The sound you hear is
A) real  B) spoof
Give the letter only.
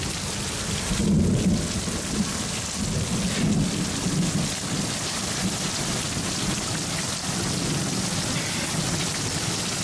A